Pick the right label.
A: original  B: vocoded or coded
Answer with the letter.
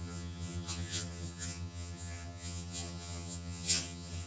B